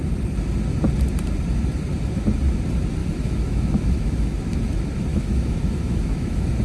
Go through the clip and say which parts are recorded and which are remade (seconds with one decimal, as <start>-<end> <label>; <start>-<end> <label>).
0.0-3.0 recorded; 3.0-4.6 remade; 4.6-5.1 recorded; 5.1-6.6 remade

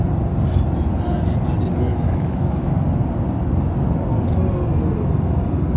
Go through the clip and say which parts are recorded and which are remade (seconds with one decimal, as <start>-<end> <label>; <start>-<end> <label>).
0.0-1.9 recorded; 1.9-2.7 remade; 2.7-5.8 recorded

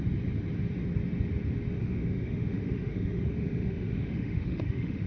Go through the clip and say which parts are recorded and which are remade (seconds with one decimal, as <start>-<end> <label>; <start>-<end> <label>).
0.0-1.8 recorded; 1.8-5.1 remade

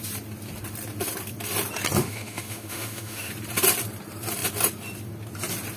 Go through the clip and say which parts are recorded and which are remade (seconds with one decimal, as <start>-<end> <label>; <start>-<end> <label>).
0.0-2.0 recorded; 2.0-3.3 remade; 3.3-5.8 recorded

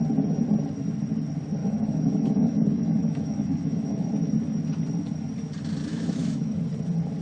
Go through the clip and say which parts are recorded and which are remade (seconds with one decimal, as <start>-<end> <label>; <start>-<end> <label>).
0.0-1.6 recorded; 1.6-4.1 remade; 4.1-5.9 recorded; 5.9-6.6 remade; 6.6-7.2 recorded